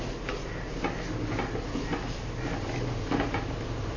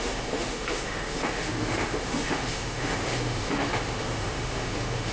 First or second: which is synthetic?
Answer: second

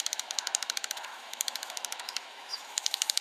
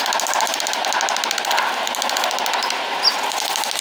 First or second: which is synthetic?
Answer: first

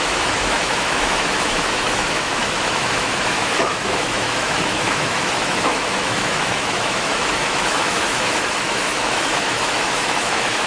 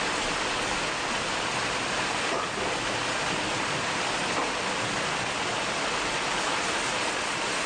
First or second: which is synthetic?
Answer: first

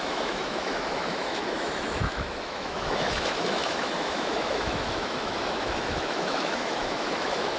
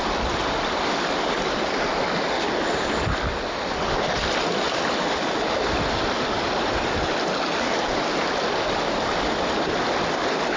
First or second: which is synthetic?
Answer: first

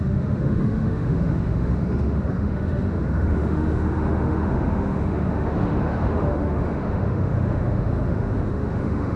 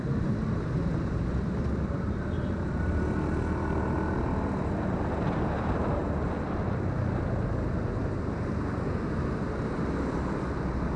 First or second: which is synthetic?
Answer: first